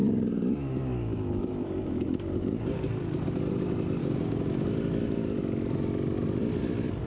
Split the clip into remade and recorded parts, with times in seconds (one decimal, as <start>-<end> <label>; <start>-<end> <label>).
0.0-2.9 remade; 2.9-4.0 recorded; 4.0-4.7 remade; 4.7-7.1 recorded